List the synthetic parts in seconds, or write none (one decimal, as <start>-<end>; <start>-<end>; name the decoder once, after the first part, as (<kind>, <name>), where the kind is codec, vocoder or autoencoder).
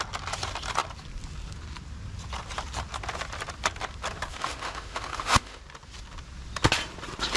4.3-5.6 (autoencoder, DAC-VAE)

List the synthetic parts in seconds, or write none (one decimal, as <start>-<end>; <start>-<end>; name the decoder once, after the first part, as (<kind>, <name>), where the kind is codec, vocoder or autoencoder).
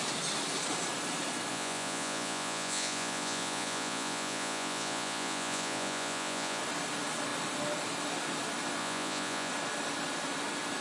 1.5-6.6 (vocoder, Vocos); 8.8-9.5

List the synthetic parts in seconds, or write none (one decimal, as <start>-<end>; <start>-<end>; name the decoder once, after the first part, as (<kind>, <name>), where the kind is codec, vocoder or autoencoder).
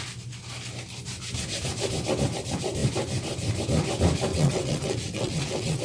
4.3-5.8 (vocoder, WaveNeXt)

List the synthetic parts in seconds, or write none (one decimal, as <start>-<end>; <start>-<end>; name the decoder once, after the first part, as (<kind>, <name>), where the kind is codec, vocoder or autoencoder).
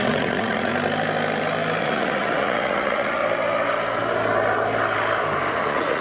0.0-0.7 (vocoder, Vocos); 1.8-3.2; 5.5-6.0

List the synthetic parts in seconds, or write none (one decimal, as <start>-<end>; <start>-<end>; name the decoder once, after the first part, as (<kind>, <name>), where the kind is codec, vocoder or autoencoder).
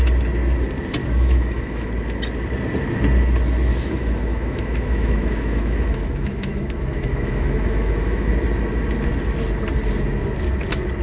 1.0-1.9 (autoencoder, DAC-VAE); 3.7-8.3